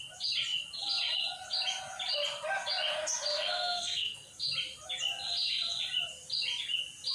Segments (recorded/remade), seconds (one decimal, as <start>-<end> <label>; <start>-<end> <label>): 0.0-3.3 recorded; 3.3-4.3 remade; 4.3-7.1 recorded